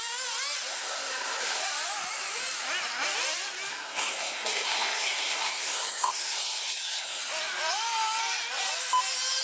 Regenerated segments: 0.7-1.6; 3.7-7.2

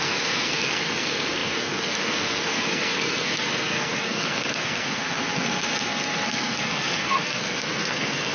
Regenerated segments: 0.0-8.3

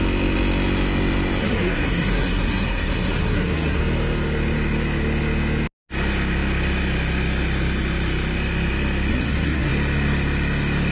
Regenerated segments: 1.4-3.8; 9.1-9.7

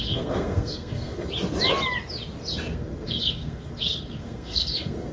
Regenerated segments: 0.0-1.3; 2.7-5.1